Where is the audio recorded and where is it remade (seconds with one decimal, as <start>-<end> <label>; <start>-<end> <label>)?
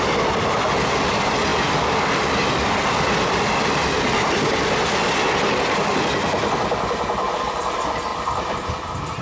0.0-9.2 recorded